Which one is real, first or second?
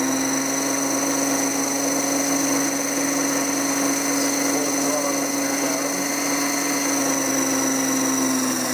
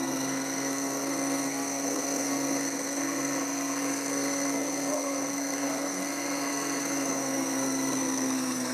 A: first